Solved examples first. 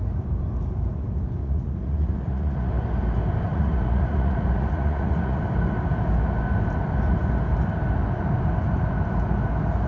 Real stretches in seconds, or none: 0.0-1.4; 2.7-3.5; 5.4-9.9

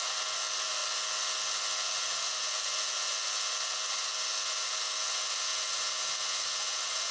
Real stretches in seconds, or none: 0.0-7.1

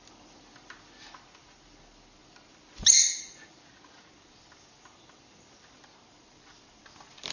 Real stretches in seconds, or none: 0.0-7.3

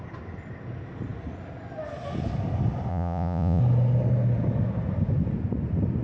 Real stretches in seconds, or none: 0.0-2.9; 3.6-6.0